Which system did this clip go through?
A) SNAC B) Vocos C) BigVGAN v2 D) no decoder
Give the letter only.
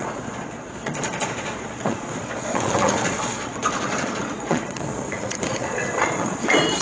B